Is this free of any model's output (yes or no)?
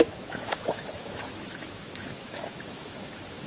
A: no